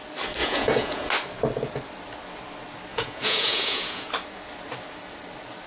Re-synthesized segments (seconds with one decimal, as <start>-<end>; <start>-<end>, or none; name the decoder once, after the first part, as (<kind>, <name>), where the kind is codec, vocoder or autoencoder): 0.4-1.1 (vocoder, Vocos); 2.9-4.1